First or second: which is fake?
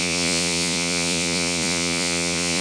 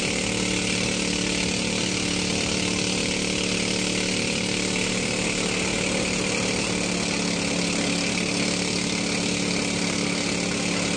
first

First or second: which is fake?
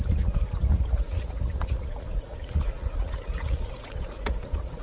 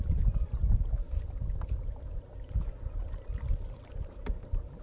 first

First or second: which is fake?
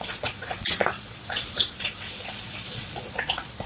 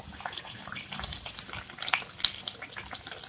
first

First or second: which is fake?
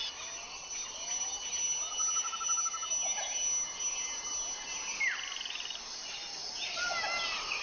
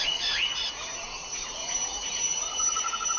second